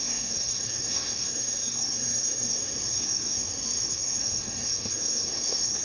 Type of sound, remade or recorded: remade